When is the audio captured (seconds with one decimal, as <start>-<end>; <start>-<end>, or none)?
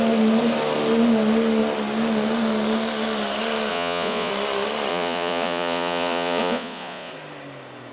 0.0-3.7; 4.3-4.9; 7.1-7.9